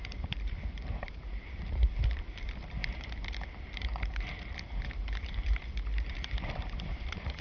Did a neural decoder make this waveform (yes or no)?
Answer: yes